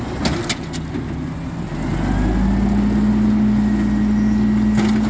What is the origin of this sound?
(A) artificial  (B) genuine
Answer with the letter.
B